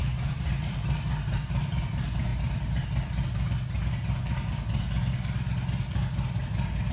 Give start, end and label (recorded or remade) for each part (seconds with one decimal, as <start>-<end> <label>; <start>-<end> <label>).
0.0-1.8 remade; 1.8-6.9 recorded